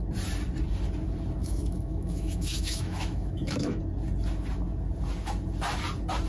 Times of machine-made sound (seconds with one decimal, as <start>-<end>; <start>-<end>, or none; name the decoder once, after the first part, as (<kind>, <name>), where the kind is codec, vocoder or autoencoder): 1.4-3.8 (autoencoder, DAC-VAE)